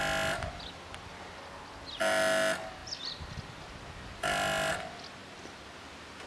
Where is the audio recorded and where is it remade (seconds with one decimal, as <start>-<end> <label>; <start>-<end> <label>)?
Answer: 0.0-5.2 recorded; 5.2-5.8 remade; 5.8-6.3 recorded

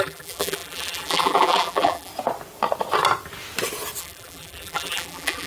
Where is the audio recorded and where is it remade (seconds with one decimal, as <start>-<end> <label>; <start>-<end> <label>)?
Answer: 0.0-2.1 remade; 2.1-4.0 recorded; 4.0-5.5 remade

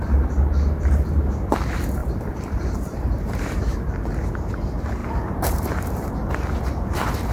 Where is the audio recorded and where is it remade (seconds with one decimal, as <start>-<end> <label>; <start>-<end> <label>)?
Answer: 0.0-2.0 recorded; 2.0-3.9 remade; 3.9-5.0 recorded; 5.0-6.1 remade; 6.1-7.3 recorded

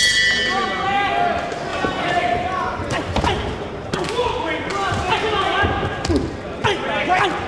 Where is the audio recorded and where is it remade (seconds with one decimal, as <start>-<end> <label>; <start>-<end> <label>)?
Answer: 0.0-1.7 recorded; 1.7-3.9 remade; 3.9-7.5 recorded